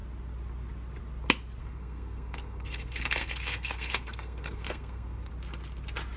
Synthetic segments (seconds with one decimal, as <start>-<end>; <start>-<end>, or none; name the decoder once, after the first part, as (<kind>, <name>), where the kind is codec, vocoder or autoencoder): 1.6-5.3 (codec, SNAC)